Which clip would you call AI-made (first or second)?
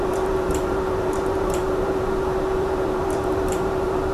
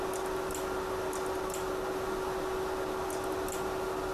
first